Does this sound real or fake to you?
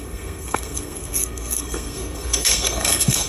fake